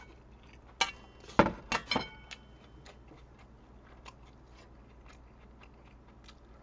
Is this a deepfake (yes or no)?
no